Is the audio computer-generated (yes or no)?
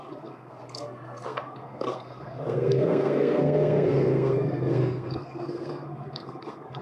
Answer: yes